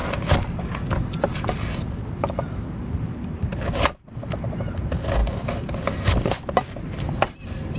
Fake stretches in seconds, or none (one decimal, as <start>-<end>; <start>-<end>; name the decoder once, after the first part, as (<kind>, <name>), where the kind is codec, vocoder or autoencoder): none